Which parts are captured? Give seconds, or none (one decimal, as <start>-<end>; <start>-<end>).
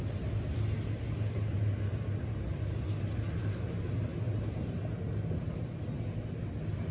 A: 0.0-6.9